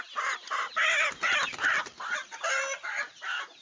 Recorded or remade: recorded